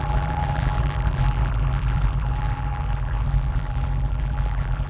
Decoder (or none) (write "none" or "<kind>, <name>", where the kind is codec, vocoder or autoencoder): vocoder, BigVGAN v2